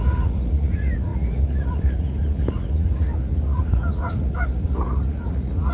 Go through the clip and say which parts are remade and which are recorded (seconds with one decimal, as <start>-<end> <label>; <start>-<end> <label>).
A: 0.0-5.7 remade